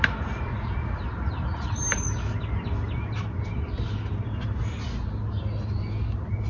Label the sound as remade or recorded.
recorded